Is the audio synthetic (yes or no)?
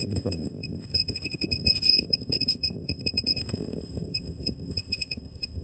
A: yes